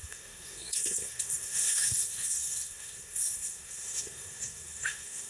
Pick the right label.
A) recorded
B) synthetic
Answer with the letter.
B